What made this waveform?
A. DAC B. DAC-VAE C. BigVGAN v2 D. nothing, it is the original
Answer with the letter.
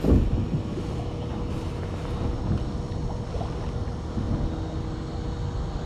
D